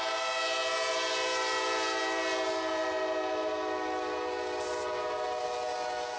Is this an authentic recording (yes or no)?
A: yes